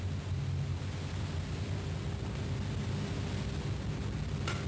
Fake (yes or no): no